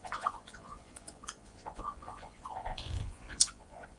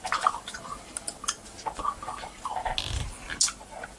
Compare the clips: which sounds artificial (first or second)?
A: first